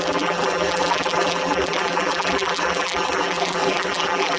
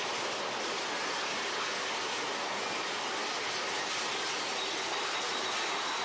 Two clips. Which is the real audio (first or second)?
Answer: second